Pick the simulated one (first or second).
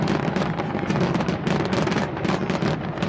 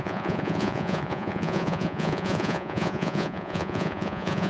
second